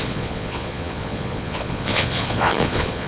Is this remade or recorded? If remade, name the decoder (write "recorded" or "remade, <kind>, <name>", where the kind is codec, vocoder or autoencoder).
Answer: remade, vocoder, Vocos